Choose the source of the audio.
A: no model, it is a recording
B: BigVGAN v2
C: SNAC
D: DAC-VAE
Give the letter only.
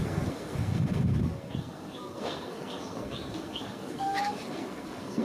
C